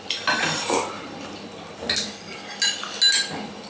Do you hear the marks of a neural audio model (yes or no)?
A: no